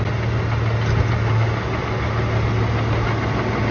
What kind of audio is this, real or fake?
real